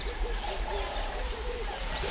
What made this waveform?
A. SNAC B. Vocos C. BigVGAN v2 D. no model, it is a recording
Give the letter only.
D